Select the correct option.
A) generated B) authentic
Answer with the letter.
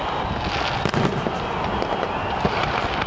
B